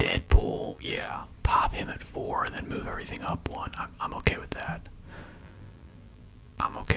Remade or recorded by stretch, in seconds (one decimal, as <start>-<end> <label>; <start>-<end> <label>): 0.0-1.2 remade; 1.2-5.4 recorded; 5.4-7.0 remade